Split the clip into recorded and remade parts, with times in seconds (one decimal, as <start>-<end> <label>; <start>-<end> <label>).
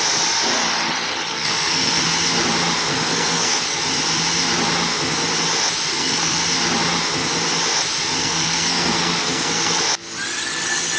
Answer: 0.0-1.3 recorded; 1.3-2.0 remade; 2.0-2.9 recorded; 2.9-3.8 remade; 3.8-5.9 recorded; 5.9-6.4 remade; 6.4-8.2 recorded; 8.2-9.8 remade; 9.8-11.0 recorded